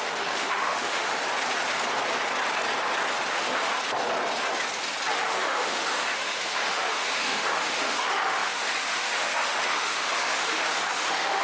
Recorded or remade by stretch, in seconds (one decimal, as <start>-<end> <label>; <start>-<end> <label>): 0.0-1.2 remade; 1.2-3.3 recorded; 3.3-3.7 remade; 3.7-5.1 recorded; 5.1-11.4 remade